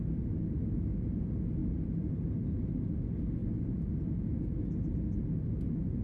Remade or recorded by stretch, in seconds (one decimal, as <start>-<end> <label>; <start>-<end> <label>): 0.0-6.0 recorded